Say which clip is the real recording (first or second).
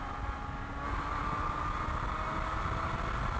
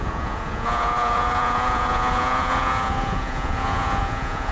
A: first